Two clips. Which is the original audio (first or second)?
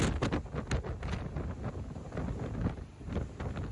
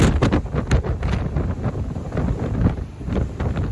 first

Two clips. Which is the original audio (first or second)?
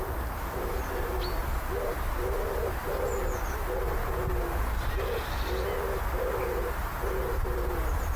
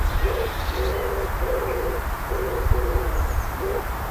first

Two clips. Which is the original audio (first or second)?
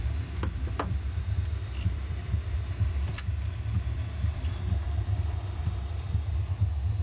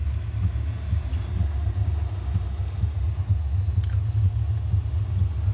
second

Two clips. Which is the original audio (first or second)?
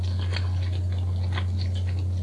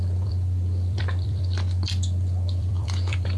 first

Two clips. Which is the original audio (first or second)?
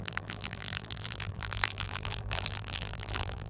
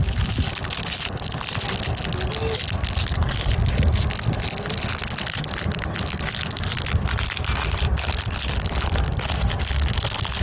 second